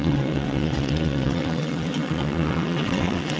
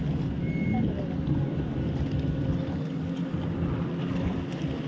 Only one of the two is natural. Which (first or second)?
second